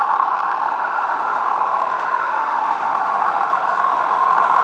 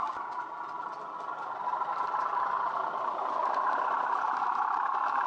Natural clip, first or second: second